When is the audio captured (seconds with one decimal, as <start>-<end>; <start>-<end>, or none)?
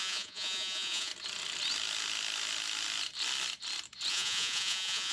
1.1-4.1